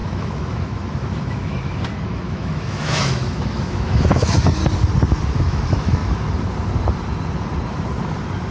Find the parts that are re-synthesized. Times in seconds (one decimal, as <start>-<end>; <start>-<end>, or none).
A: 0.0-4.6; 5.4-6.0